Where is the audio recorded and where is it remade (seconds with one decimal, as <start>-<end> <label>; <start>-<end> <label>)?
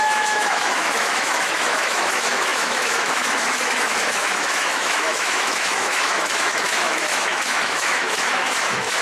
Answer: 0.0-9.0 remade